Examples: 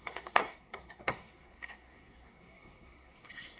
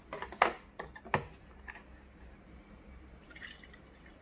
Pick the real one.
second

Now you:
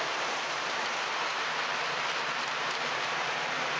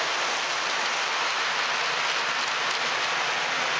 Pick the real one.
second